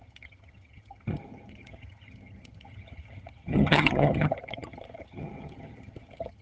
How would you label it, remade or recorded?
remade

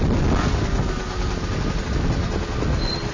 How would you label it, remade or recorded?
recorded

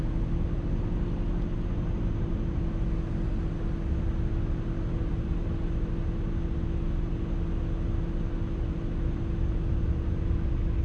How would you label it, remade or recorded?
recorded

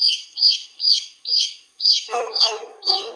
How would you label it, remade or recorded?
remade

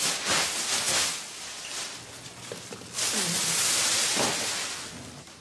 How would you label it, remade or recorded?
recorded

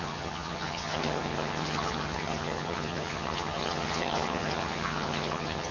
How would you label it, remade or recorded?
remade